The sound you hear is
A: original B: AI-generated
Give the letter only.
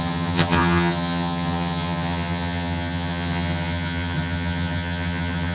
B